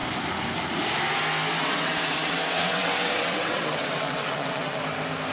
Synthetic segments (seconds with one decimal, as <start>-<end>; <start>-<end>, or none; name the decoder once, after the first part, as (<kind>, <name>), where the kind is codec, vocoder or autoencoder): 1.6-4.8 (vocoder, WaveNeXt)